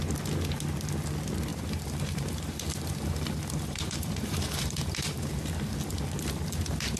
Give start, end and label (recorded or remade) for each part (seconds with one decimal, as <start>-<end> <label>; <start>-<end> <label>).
0.0-1.5 recorded; 1.5-5.4 remade; 5.4-7.0 recorded